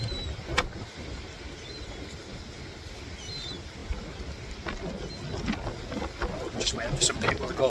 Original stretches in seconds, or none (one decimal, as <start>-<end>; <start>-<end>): 0.0-7.7